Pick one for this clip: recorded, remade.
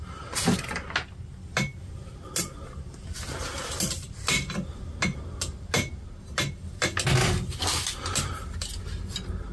recorded